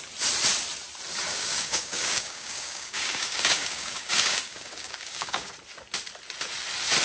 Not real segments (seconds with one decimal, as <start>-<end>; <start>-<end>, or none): 1.3-5.5